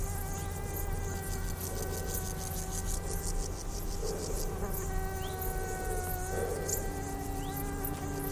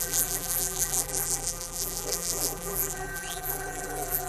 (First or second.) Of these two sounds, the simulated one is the second